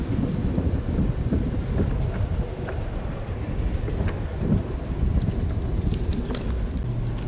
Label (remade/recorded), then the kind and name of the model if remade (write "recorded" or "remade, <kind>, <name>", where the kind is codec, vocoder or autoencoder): recorded